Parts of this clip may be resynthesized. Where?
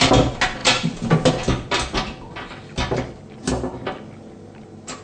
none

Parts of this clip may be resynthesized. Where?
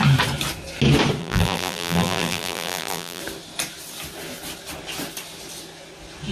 1.2-3.2 (vocoder, BigVGAN v2)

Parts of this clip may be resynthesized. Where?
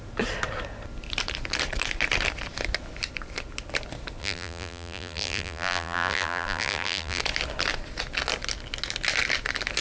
4.2-7.2 (vocoder, BigVGAN v2)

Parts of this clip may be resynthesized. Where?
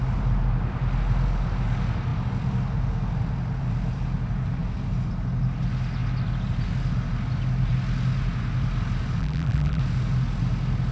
9.2-9.8 (vocoder, BigVGAN v2)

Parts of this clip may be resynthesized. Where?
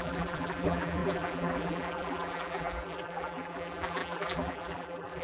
0.0-5.2 (vocoder, BigVGAN v2)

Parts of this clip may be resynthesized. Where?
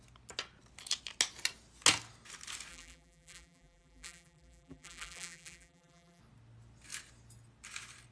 2.7-6.2 (vocoder, BigVGAN v2)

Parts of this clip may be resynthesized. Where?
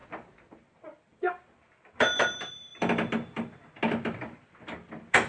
0.5-5.3 (vocoder, BigVGAN v2)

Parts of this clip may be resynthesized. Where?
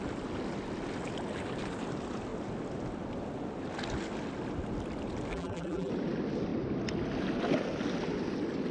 5.3-5.9 (vocoder, BigVGAN v2)